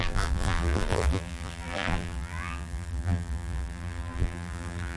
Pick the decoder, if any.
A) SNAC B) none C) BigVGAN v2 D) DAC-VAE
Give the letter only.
C